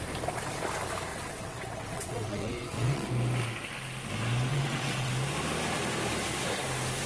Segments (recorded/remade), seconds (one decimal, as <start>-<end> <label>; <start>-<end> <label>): 0.0-1.1 recorded; 1.1-3.1 remade; 3.1-4.5 recorded; 4.5-5.1 remade; 5.1-7.1 recorded